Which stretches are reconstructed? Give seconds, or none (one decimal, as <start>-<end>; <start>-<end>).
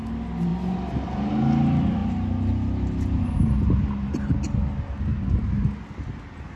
none